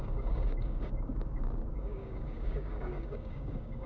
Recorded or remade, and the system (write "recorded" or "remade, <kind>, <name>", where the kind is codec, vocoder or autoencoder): remade, codec, DAC